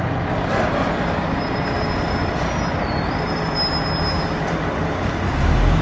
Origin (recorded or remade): recorded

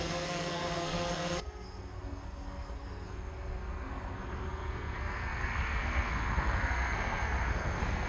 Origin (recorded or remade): remade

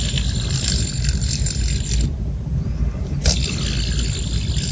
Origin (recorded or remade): recorded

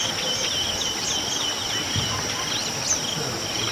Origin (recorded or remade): recorded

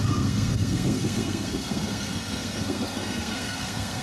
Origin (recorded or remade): remade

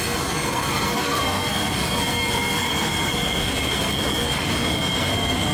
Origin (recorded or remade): remade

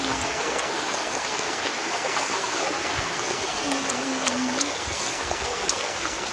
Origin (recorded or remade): remade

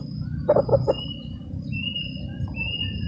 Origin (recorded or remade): recorded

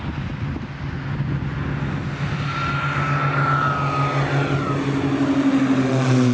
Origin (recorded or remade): recorded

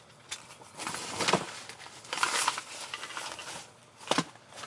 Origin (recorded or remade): recorded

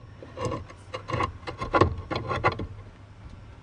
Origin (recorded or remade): recorded